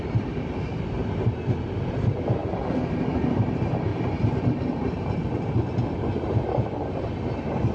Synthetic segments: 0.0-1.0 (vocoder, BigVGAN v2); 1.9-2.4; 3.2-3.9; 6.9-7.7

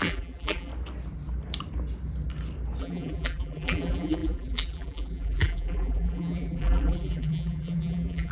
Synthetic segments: 0.0-0.7 (vocoder, BigVGAN v2); 2.8-8.3

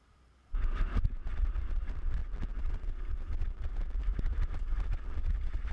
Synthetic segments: 0.0-2.2 (vocoder, BigVGAN v2); 2.7-4.0; 4.9-5.7

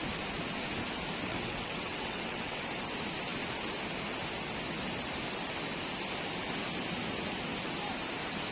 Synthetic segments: 1.3-2.6 (vocoder, WaveNeXt)

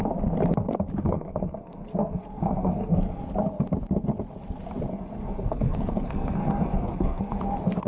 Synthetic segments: 1.0-3.2 (codec, SNAC); 4.9-7.4

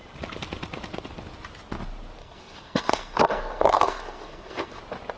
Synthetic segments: 2.2-4.8 (codec, SNAC)

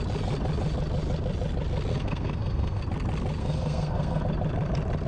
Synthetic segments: 1.9-2.8 (codec, SNAC); 3.4-4.2

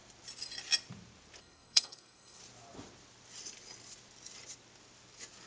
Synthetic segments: 1.4-2.4 (codec, SNAC)